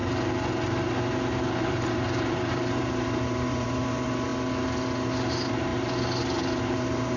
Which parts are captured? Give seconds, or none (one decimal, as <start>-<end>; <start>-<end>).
0.0-1.7; 4.3-5.3